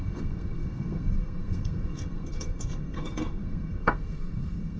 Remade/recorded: remade